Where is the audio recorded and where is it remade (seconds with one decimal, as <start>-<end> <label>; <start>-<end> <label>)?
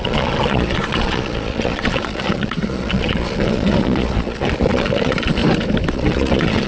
0.0-5.4 remade; 5.4-5.9 recorded; 5.9-6.7 remade